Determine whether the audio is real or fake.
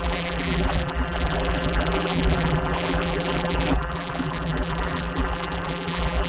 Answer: fake